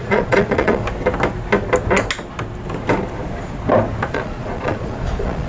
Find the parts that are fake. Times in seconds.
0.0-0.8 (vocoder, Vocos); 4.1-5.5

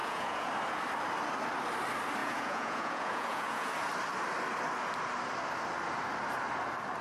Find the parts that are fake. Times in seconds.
0.0-0.5 (vocoder, Vocos); 2.2-3.7

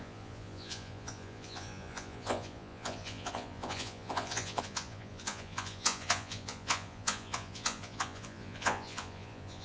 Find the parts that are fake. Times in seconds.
0.0-9.6 (vocoder, Vocos)

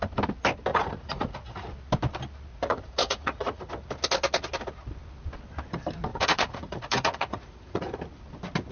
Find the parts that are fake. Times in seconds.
0.7-1.7 (vocoder, Vocos); 2.5-3.7; 6.1-8.0

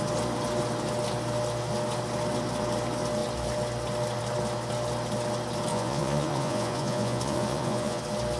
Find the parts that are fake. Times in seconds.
5.7-8.0 (vocoder, Vocos)

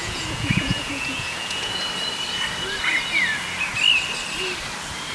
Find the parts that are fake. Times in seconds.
0.0-1.8 (vocoder, Vocos)

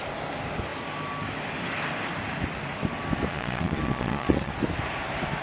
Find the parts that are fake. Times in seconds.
3.3-4.5 (vocoder, Vocos)